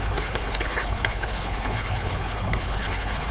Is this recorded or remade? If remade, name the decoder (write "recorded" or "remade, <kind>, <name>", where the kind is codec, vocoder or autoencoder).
remade, codec, HILCodec